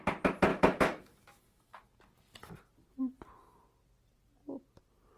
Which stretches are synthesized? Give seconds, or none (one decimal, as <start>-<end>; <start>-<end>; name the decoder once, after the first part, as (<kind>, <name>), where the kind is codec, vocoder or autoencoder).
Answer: 0.5-1.8 (autoencoder, DAC-VAE)